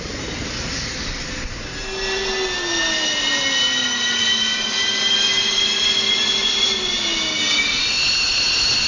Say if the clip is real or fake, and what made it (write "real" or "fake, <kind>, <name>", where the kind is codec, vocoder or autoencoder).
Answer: real